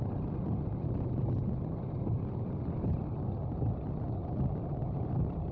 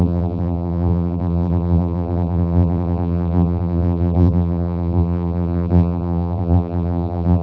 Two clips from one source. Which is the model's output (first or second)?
second